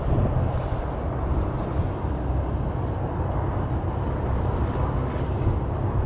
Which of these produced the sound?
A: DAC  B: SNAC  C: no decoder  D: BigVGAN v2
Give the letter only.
C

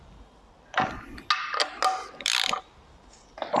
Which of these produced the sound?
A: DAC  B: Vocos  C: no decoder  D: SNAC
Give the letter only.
C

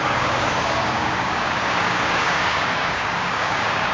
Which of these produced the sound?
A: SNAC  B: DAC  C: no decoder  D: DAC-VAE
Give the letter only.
B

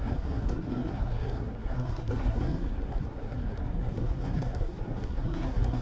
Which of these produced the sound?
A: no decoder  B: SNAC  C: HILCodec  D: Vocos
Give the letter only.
B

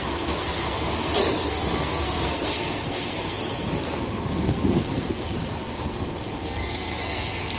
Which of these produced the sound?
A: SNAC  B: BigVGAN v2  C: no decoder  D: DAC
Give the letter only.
A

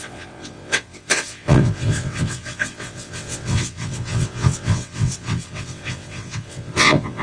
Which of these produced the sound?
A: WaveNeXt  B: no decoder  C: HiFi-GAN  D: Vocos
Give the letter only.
A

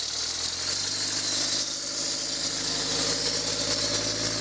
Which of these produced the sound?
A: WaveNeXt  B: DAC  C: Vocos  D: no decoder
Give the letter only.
D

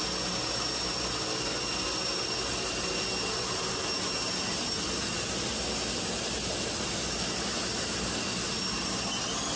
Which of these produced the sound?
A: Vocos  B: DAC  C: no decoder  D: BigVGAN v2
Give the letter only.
C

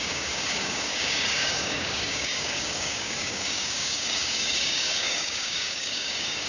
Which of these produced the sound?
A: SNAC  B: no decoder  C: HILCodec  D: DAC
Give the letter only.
D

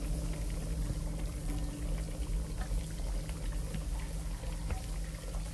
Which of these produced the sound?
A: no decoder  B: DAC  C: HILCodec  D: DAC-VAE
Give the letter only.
A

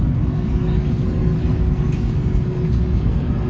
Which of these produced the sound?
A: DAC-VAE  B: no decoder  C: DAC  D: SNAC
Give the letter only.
D